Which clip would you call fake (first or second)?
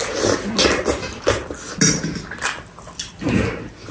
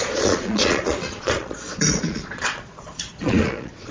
second